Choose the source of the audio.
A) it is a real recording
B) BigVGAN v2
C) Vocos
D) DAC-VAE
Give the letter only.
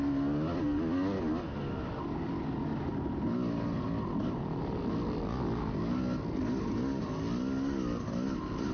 A